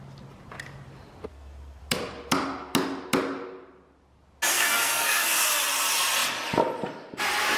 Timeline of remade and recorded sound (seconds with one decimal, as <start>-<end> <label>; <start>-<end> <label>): 0.0-1.3 recorded; 1.3-1.8 remade; 1.8-4.5 recorded; 4.5-5.6 remade; 5.6-7.6 recorded